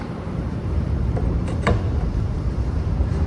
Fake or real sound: fake